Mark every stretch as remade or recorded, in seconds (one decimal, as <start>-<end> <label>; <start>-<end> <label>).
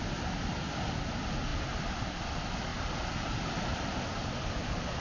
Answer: 0.0-5.0 remade